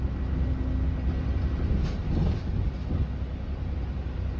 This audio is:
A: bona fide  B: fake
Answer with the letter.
A